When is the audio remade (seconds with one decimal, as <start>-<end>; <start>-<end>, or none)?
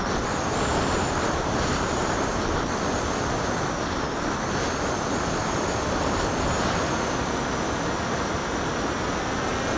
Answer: 0.5-2.7